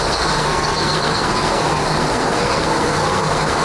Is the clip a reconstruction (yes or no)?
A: yes